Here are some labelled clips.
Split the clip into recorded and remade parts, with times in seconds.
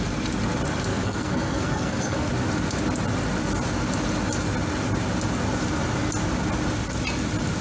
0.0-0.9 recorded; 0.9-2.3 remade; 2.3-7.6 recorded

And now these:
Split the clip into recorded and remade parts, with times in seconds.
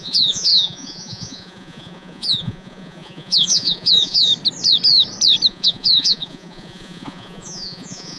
0.0-4.3 remade; 4.3-5.5 recorded; 5.5-8.2 remade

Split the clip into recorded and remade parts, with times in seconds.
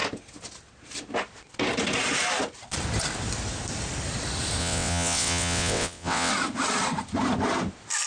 0.0-4.6 recorded; 4.6-6.3 remade; 6.3-8.1 recorded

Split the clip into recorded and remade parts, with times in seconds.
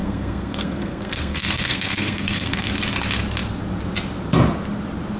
0.0-2.7 remade; 2.7-5.2 recorded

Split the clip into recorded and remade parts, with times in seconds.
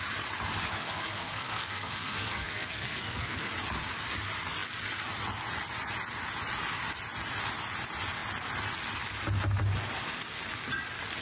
0.0-0.7 recorded; 0.7-3.5 remade; 3.5-11.2 recorded